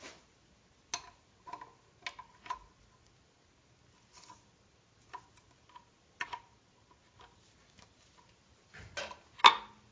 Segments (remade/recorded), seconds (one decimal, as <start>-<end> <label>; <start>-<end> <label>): 0.0-9.9 recorded